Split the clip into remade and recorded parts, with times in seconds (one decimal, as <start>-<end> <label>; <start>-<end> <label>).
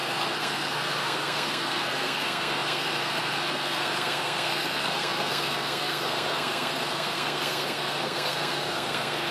0.0-9.3 remade